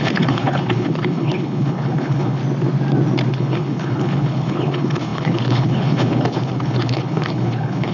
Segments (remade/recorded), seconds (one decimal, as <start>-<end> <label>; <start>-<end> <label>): 0.0-2.4 remade; 2.4-3.3 recorded; 3.3-7.9 remade